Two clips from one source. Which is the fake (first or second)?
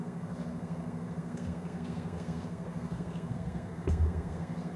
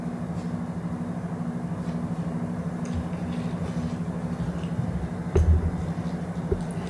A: first